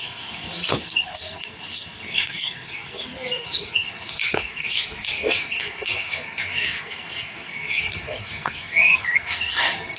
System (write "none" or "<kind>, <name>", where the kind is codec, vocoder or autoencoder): codec, SNAC